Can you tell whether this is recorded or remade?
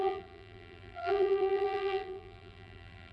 remade